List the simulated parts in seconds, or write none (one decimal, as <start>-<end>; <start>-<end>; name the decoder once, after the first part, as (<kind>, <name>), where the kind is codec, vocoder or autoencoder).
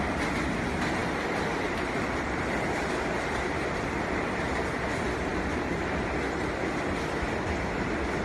none